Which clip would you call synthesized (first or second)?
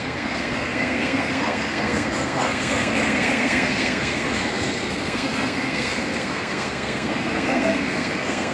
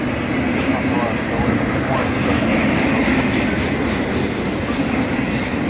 first